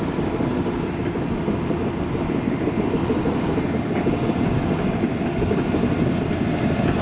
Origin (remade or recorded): recorded